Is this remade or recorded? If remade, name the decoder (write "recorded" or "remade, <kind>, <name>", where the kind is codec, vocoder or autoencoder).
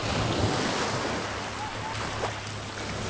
recorded